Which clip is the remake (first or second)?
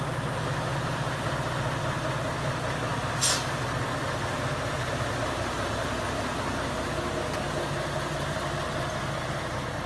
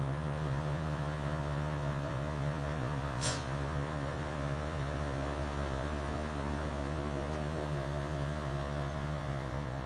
second